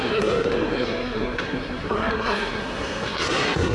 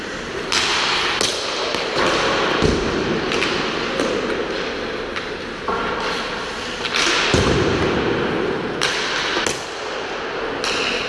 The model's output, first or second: first